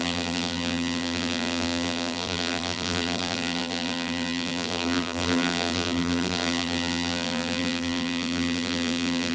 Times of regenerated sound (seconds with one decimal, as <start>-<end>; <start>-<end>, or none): 0.0-9.3